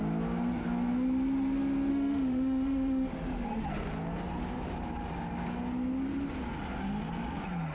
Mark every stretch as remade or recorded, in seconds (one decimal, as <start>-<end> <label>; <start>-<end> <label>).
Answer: 0.0-1.9 recorded; 1.9-3.6 remade; 3.6-7.7 recorded